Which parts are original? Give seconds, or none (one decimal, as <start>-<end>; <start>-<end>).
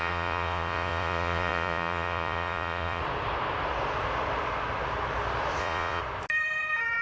3.0-5.6; 6.0-7.0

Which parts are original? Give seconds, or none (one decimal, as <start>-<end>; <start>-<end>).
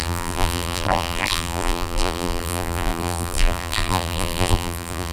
none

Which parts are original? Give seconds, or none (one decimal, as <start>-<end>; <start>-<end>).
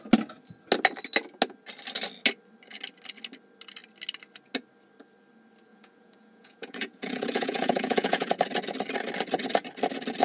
0.0-5.7; 8.4-10.2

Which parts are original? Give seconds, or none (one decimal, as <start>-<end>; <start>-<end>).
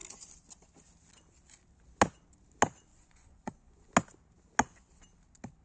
0.0-2.9; 3.9-5.6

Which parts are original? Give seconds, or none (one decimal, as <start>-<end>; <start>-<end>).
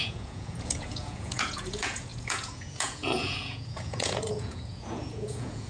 none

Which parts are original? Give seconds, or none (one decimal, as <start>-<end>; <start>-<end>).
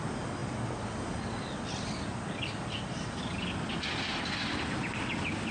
0.0-5.5